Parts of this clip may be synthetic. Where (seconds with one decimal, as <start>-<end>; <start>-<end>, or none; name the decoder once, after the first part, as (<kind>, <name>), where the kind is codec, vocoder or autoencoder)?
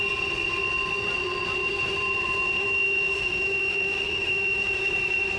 1.6-4.8 (autoencoder, DAC-VAE)